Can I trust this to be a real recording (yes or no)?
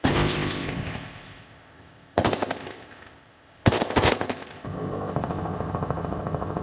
no